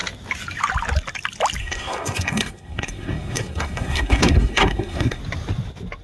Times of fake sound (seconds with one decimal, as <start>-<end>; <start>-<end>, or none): 1.6-5.2